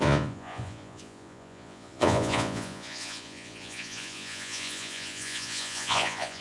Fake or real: fake